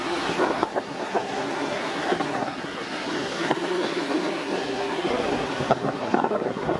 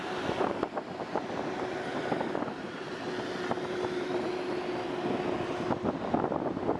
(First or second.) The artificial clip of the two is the first